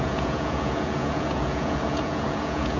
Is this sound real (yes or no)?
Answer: no